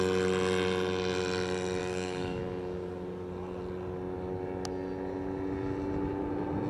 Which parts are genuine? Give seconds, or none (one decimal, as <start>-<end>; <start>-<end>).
0.0-1.8; 2.4-6.7